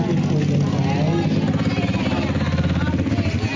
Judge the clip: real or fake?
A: real